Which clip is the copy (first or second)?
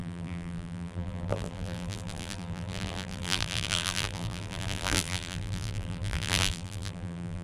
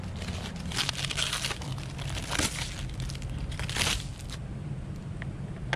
first